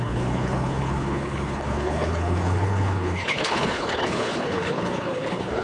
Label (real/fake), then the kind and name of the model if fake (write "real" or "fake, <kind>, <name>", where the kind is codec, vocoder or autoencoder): fake, codec, HILCodec